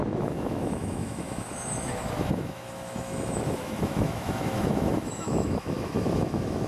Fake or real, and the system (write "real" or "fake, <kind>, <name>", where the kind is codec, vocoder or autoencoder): fake, autoencoder, DAC-VAE